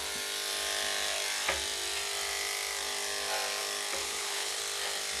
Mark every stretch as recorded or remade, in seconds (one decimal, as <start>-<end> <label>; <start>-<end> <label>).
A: 0.0-4.0 recorded; 4.0-4.6 remade; 4.6-5.2 recorded